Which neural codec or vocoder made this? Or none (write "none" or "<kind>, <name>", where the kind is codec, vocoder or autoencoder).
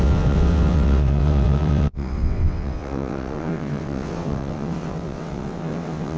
vocoder, WaveNeXt